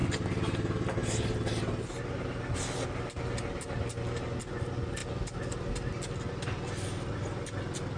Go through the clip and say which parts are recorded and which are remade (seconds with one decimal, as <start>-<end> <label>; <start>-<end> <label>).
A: 0.0-8.0 recorded